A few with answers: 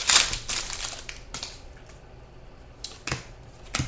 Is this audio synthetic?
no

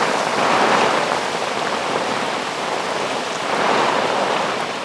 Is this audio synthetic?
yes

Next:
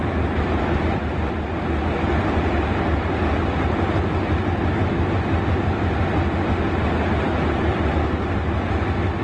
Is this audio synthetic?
no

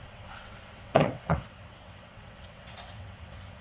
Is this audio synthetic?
yes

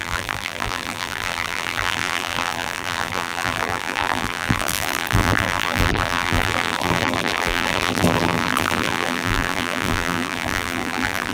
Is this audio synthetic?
yes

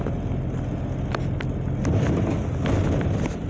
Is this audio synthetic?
no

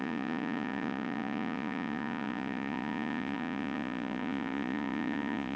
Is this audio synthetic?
yes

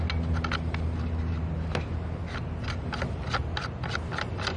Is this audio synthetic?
no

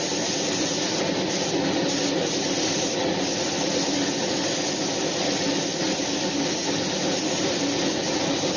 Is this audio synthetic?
no